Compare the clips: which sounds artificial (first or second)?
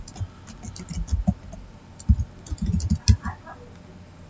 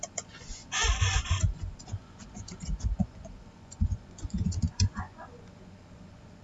second